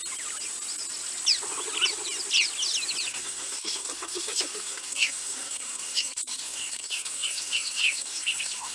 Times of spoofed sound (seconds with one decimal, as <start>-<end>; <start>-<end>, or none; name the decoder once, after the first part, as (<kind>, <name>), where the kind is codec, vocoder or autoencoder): 3.1-8.7 (codec, SNAC)